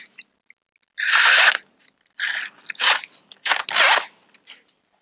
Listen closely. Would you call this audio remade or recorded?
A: recorded